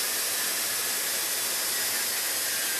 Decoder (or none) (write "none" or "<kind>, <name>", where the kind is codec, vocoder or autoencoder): none